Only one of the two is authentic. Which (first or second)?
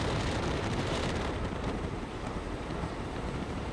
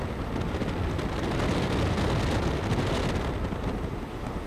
second